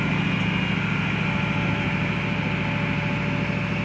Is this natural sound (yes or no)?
yes